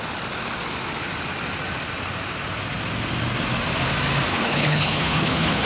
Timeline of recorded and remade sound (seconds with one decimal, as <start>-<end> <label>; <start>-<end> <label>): 0.0-4.3 recorded; 4.3-5.7 remade